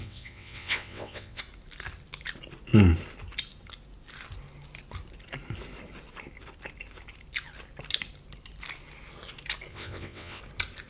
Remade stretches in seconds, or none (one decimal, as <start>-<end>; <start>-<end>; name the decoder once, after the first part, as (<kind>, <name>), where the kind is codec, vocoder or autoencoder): 0.0-1.4 (vocoder, WaveNeXt); 9.7-10.4